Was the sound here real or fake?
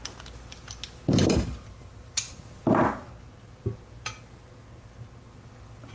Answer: real